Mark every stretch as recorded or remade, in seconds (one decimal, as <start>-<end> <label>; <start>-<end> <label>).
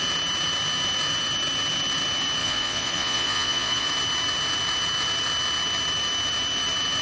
0.0-2.4 recorded; 2.4-3.9 remade; 3.9-7.0 recorded